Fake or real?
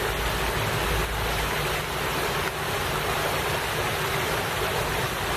real